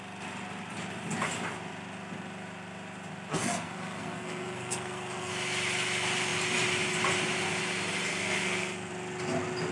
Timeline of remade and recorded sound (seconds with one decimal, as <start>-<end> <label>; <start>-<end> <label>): 0.0-3.3 recorded; 3.3-5.3 remade; 5.3-8.1 recorded; 8.1-8.9 remade; 8.9-9.7 recorded